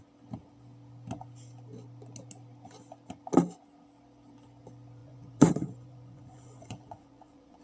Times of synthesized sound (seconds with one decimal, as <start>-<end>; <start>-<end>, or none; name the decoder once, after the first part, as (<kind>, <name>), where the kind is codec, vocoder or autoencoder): 5.0-7.6 (vocoder, Vocos)